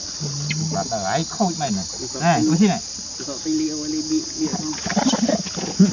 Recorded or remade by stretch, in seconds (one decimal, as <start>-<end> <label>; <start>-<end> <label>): 0.0-5.9 recorded